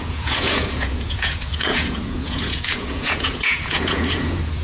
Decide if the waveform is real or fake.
fake